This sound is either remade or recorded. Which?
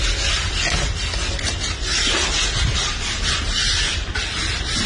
recorded